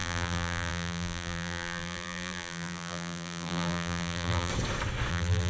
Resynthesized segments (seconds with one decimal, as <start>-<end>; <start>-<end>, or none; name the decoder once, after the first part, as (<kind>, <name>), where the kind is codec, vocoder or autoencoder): 0.0-4.5 (vocoder, BigVGAN v2); 5.1-5.5